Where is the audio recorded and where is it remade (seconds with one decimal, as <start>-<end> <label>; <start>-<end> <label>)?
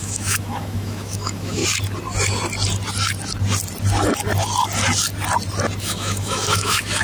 0.0-1.6 remade; 1.6-5.8 recorded; 5.8-7.0 remade